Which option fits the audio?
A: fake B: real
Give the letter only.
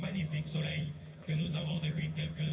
A